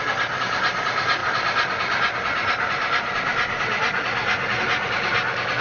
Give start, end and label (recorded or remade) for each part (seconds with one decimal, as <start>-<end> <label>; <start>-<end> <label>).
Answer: 0.0-5.6 recorded